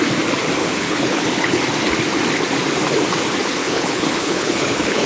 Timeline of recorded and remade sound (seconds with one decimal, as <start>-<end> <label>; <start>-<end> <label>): 0.0-0.6 recorded; 0.6-1.6 remade; 1.6-3.6 recorded; 3.6-5.1 remade